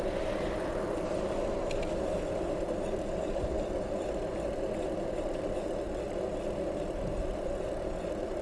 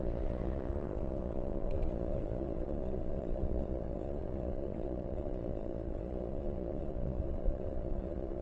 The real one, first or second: first